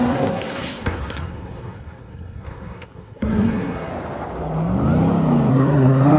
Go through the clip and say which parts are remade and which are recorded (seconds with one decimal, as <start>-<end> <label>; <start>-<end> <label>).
0.0-3.9 remade; 3.9-5.5 recorded; 5.5-6.2 remade